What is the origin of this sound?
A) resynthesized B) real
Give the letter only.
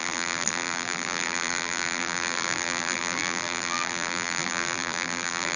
A